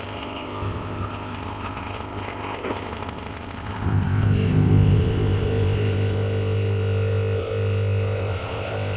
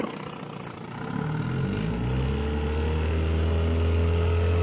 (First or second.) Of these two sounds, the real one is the second